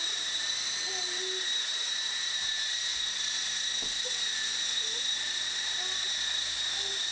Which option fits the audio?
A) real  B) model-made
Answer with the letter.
B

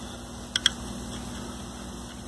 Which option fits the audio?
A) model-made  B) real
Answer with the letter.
B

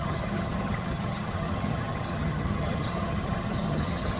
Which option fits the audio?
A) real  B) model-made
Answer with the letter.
B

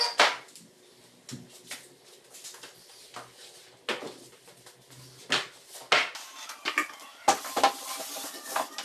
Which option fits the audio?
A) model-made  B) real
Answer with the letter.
B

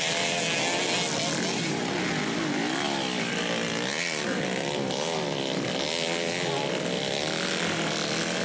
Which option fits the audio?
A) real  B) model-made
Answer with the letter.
A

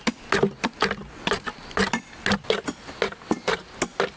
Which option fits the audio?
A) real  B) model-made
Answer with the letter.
A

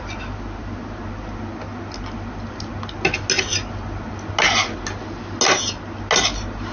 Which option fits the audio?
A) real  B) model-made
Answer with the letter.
A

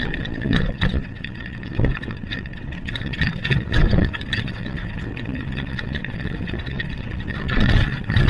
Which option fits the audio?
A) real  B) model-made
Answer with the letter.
B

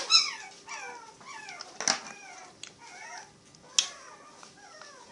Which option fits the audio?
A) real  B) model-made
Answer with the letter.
A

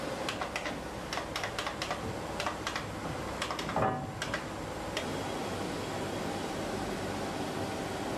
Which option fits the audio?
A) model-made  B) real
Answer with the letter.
B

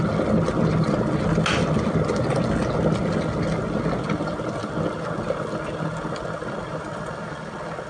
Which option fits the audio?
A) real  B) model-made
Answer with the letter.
A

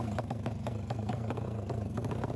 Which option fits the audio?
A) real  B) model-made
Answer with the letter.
B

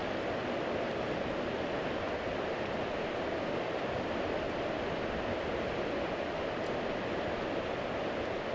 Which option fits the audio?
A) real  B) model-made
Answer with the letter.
A